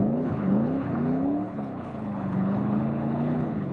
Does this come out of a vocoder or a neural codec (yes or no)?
yes